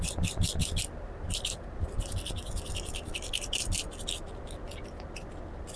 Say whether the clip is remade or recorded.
recorded